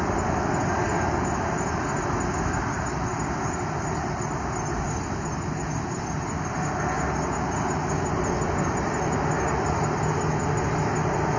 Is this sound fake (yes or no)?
no